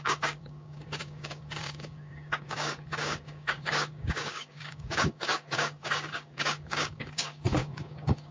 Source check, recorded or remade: remade